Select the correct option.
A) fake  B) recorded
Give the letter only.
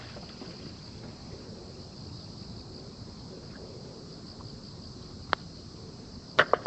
B